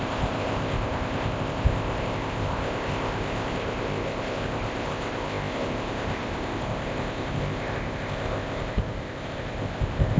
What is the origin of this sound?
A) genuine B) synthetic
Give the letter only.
B